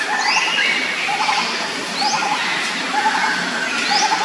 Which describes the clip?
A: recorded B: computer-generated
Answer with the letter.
A